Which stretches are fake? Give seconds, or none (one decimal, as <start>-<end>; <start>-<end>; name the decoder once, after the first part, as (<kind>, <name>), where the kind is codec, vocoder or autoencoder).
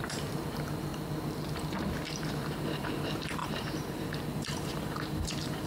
0.0-0.9 (vocoder, BigVGAN v2); 1.9-5.7